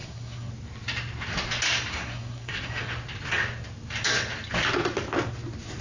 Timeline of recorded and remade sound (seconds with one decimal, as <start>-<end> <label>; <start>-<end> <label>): 0.0-0.5 remade; 0.5-1.9 recorded; 1.9-2.8 remade; 2.8-5.8 recorded